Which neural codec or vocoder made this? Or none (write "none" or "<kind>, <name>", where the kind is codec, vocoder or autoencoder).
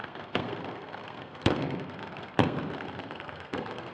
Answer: codec, SNAC